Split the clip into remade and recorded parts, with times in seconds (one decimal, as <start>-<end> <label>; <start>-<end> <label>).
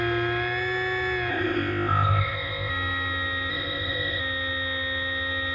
0.0-1.3 recorded; 1.3-2.7 remade; 2.7-3.5 recorded; 3.5-4.2 remade; 4.2-5.5 recorded